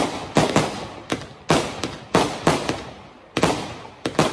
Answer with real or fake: real